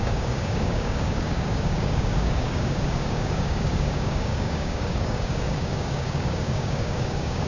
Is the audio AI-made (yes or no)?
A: yes